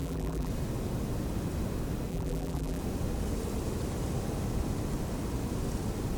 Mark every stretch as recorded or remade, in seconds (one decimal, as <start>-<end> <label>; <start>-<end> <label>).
0.0-0.5 remade; 0.5-2.1 recorded; 2.1-2.8 remade; 2.8-6.2 recorded